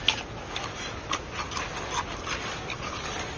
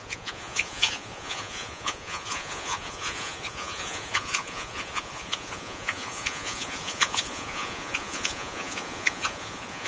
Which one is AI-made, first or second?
second